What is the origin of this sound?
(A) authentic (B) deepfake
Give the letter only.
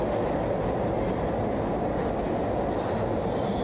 A